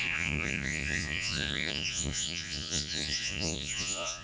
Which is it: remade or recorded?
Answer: remade